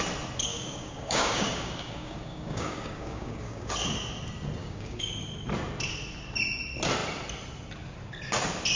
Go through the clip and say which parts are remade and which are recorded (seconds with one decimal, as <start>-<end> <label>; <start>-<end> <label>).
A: 0.0-0.5 recorded; 0.5-3.7 remade; 3.7-4.6 recorded; 4.6-5.1 remade; 5.1-8.8 recorded